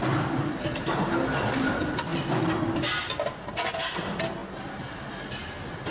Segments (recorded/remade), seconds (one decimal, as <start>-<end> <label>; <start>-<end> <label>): 0.0-5.9 recorded